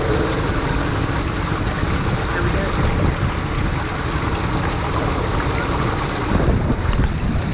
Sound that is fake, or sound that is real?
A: real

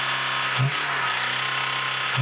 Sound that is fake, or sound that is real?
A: real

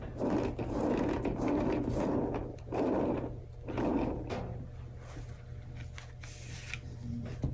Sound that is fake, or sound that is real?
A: real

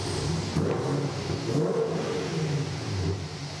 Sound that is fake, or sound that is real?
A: real